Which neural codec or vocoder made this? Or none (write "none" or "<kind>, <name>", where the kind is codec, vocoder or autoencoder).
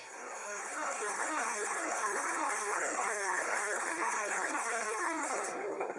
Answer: codec, SNAC